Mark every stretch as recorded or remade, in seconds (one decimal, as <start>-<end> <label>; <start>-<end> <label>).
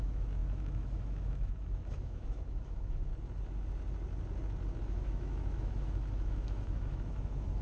0.0-3.1 remade; 3.1-4.8 recorded; 4.8-7.6 remade